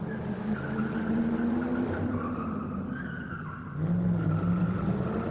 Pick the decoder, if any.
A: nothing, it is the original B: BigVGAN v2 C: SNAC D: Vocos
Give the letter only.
A